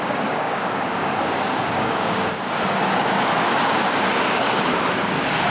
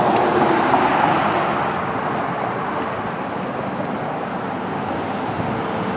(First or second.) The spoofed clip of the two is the first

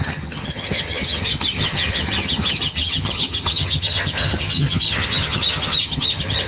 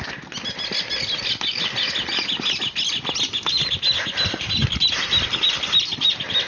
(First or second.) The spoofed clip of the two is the first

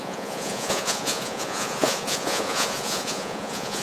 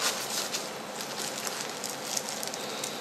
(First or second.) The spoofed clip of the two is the first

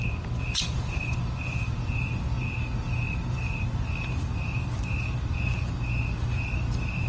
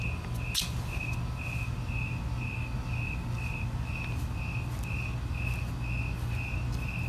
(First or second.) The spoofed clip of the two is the first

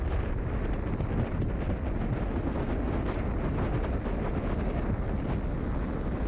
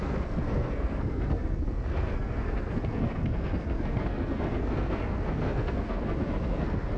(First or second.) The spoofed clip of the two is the second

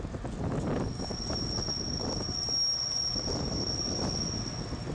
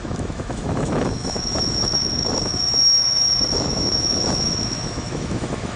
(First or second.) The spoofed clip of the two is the second